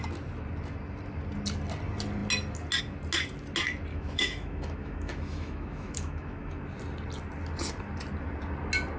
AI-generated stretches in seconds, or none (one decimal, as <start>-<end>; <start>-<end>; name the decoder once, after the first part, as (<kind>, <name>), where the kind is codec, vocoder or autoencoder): 3.9-6.6 (autoencoder, DAC-VAE)